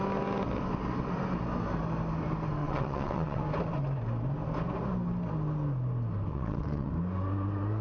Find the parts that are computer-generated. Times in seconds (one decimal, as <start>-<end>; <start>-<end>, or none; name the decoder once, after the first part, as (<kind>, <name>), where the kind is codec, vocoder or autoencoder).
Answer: 2.6-3.4 (vocoder, WaveNeXt); 6.3-6.9

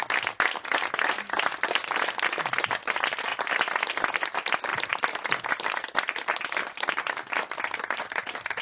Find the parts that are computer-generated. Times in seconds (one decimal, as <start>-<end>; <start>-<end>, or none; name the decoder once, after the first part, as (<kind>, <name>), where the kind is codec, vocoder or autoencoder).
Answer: 3.3-3.8 (vocoder, BigVGAN v2); 4.7-5.2

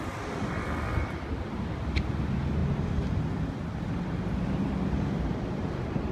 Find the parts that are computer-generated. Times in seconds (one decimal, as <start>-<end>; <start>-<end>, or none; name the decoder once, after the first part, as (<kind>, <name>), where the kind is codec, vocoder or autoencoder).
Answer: none

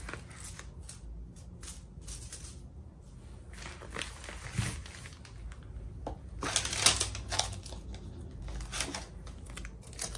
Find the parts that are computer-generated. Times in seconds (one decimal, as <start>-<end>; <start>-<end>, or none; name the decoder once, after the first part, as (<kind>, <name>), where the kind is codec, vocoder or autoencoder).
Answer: none

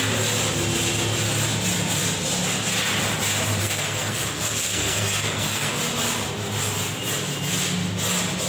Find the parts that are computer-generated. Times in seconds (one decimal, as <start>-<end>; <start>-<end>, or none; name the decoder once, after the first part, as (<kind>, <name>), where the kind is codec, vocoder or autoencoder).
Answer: 3.6-5.8 (codec, SNAC)

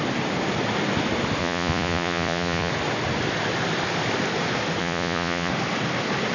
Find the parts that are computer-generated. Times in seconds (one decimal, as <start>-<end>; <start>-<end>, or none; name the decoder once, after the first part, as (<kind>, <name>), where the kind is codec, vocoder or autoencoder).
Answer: 1.4-2.7 (vocoder, Vocos); 4.8-5.5

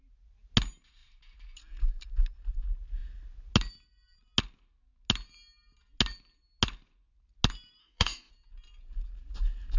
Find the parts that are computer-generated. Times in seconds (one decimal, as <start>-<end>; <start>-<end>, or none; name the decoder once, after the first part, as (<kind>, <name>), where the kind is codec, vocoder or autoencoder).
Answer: 7.8-8.3 (autoencoder, DAC-VAE)

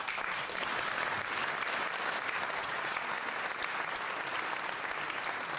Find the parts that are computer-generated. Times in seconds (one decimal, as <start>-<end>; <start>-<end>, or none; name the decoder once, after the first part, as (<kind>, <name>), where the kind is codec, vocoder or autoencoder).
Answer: 2.6-3.1 (vocoder, Vocos)